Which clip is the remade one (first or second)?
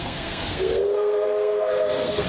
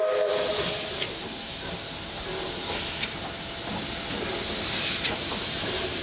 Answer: first